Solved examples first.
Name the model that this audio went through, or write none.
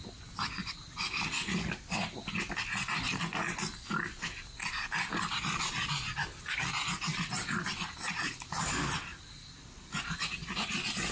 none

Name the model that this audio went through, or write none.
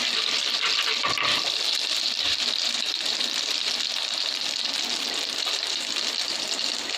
vocoder, BigVGAN v2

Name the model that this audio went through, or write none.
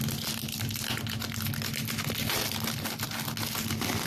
none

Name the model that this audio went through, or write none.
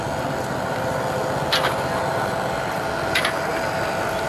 none